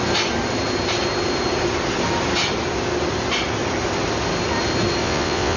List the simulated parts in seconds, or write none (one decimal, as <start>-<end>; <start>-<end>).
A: 5.0-5.6